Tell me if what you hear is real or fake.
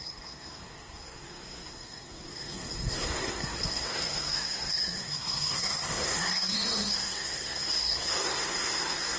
fake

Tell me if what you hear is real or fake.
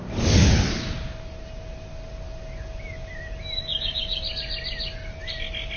real